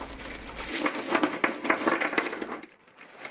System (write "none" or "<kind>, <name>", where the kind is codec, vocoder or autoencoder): none